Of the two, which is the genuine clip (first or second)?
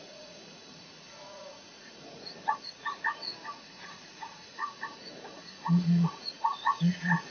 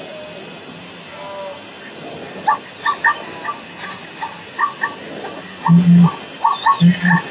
second